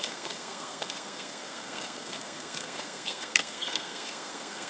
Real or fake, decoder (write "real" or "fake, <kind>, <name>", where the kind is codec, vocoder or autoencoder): fake, codec, SNAC